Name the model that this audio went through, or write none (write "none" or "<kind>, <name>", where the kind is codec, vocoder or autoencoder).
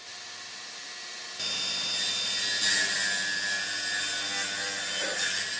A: none